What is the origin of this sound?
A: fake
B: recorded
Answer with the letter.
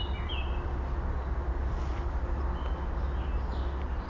B